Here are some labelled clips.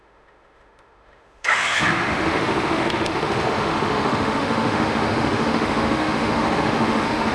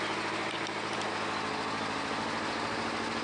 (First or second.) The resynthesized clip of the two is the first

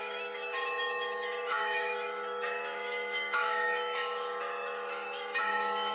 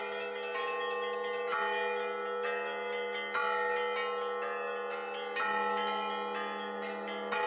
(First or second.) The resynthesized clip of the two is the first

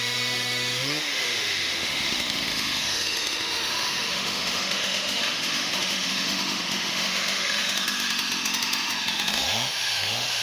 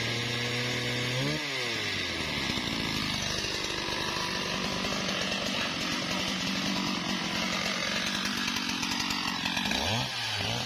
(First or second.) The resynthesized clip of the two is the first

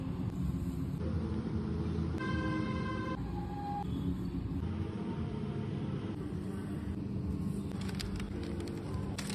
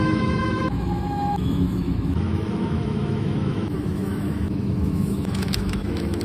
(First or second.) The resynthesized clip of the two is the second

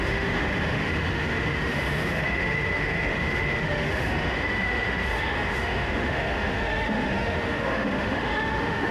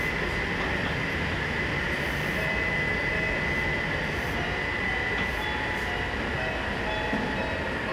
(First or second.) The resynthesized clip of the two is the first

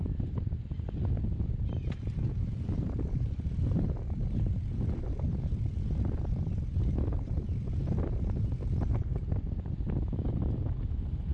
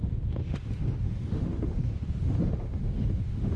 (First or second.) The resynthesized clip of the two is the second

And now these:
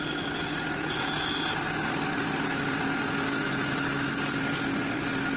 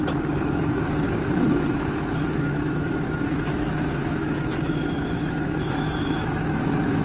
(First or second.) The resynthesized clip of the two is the second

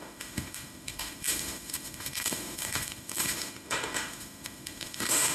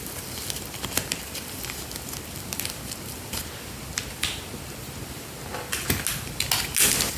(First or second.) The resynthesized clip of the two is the first